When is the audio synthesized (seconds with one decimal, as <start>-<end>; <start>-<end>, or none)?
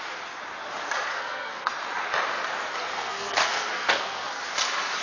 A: 1.1-1.7; 2.9-4.4